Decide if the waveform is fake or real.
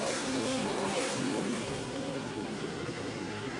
fake